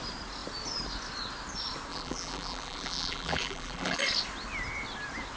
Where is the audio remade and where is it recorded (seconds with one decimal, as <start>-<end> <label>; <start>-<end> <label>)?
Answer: 0.0-1.9 recorded; 1.9-4.0 remade; 4.0-5.4 recorded

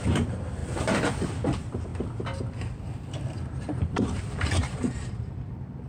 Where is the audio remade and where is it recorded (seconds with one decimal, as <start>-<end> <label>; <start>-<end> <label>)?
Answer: 0.0-1.9 remade; 1.9-3.5 recorded; 3.5-5.9 remade

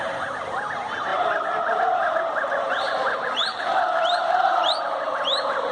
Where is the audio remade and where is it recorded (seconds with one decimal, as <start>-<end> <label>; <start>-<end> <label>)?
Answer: 0.0-1.1 recorded; 1.1-4.5 remade; 4.5-5.7 recorded

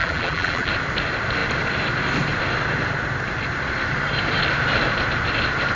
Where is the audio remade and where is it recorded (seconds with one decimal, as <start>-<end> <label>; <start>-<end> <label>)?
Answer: 0.0-0.7 remade; 0.7-5.8 recorded

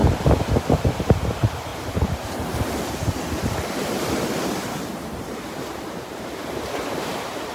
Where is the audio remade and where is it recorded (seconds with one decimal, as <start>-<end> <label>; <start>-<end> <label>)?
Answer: 0.0-0.9 recorded; 0.9-1.7 remade; 1.7-4.6 recorded; 4.6-7.5 remade